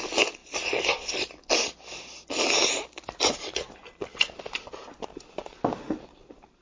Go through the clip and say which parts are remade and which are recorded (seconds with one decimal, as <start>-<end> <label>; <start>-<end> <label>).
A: 0.0-6.6 recorded